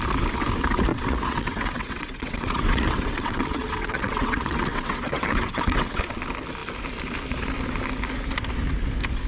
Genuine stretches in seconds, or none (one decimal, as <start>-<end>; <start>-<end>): 0.0-0.9; 6.0-9.3